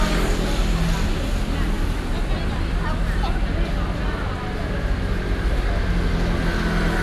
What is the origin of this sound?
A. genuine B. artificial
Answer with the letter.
A